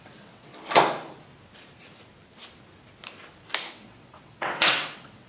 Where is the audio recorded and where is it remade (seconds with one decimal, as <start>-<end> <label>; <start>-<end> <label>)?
0.0-0.5 remade; 0.5-3.7 recorded; 3.7-5.3 remade